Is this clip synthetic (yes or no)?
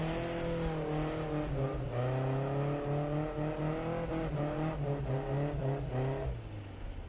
no